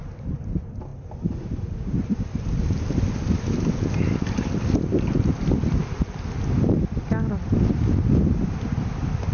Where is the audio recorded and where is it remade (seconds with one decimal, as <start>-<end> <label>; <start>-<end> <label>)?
0.0-9.3 recorded